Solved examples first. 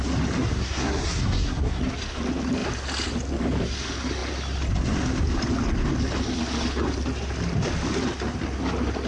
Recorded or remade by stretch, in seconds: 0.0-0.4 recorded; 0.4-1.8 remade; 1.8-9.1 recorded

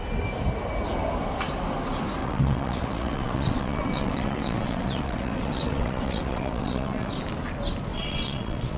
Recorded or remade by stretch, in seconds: 0.0-2.2 recorded; 2.2-7.1 remade; 7.1-7.9 recorded; 7.9-8.8 remade

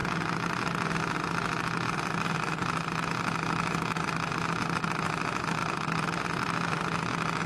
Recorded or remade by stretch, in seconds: 0.0-5.6 recorded; 5.6-6.7 remade; 6.7-7.5 recorded

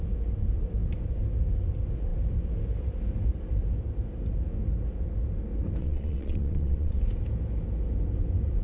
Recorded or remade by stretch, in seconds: 0.0-5.8 recorded; 5.8-7.0 remade; 7.0-8.6 recorded

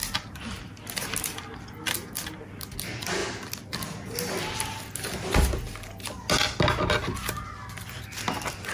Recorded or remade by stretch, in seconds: 0.0-8.7 recorded